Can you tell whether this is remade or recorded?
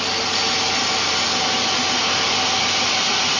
recorded